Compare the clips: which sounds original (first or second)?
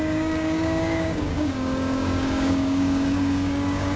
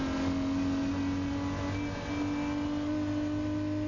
second